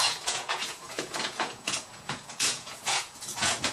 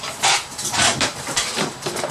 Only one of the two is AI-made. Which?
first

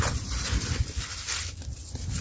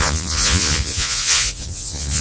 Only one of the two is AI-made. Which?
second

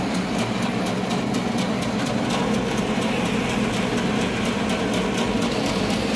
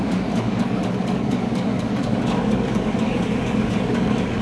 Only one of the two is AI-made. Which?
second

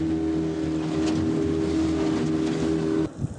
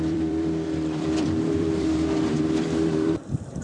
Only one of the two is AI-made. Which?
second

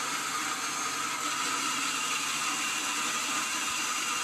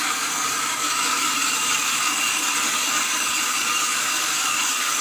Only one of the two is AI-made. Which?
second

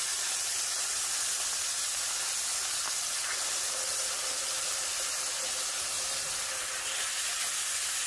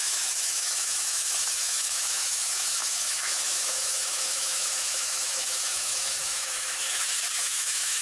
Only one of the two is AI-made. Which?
second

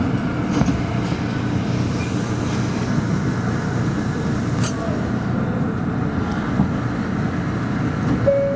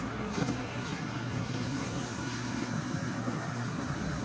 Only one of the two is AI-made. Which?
second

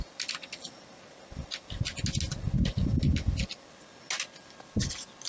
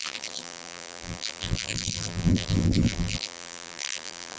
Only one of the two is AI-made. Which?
second